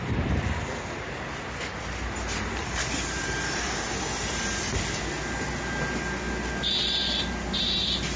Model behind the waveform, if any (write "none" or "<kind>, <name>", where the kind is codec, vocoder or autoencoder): none